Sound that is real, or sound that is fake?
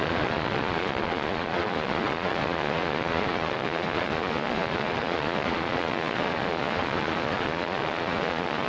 fake